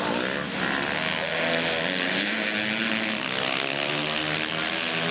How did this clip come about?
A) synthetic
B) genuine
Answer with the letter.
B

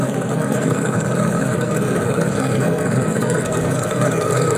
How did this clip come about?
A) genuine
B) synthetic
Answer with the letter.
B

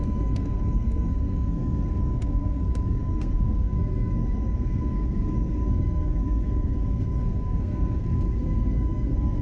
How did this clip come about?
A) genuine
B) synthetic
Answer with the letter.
B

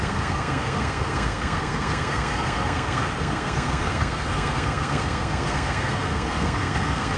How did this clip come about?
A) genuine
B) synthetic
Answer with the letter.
B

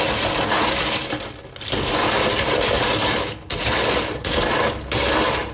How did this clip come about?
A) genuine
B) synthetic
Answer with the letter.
A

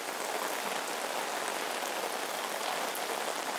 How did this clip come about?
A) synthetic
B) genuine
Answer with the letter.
B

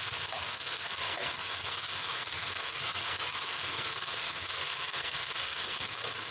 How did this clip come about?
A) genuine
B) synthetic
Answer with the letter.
B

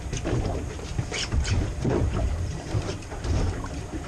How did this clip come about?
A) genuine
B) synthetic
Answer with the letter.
A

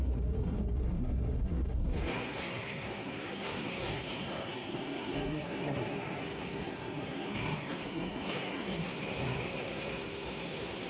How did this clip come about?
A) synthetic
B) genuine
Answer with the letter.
A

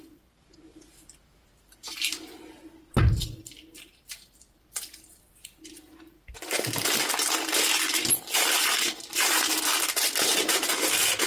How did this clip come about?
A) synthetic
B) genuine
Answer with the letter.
B